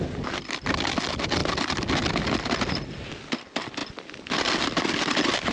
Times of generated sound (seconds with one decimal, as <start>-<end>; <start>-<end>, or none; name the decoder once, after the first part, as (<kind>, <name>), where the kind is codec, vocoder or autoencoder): none